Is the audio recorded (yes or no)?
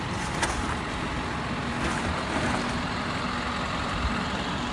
yes